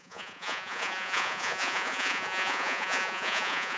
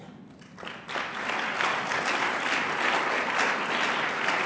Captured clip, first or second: second